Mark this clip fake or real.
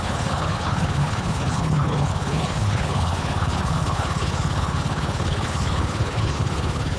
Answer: fake